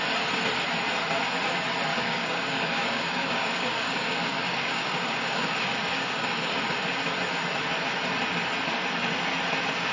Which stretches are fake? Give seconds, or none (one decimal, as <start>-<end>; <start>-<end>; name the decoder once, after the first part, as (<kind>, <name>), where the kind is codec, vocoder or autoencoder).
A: 1.9-6.6 (codec, DAC)